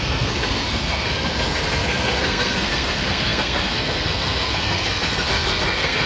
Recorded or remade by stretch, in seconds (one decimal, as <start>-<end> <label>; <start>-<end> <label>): 0.0-6.1 remade